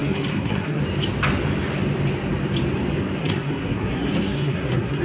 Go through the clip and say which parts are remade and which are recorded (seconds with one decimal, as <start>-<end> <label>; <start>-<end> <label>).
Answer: 0.0-0.8 remade; 0.8-3.2 recorded; 3.2-5.0 remade